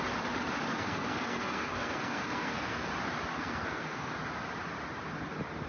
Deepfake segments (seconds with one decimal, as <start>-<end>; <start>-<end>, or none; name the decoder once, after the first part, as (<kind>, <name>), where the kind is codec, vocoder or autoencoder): 0.7-2.9 (codec, SNAC); 3.3-4.1